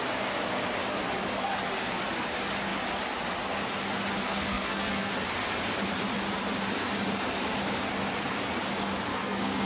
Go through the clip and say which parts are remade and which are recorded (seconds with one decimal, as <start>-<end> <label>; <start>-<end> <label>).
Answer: 0.0-4.2 recorded; 4.2-5.1 remade; 5.1-9.1 recorded; 9.1-9.7 remade